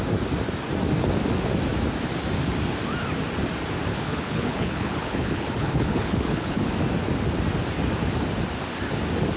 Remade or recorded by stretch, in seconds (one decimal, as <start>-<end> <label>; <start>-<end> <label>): 0.0-3.9 recorded; 3.9-6.7 remade; 6.7-9.4 recorded